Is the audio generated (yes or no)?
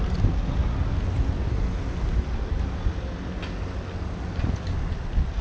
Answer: no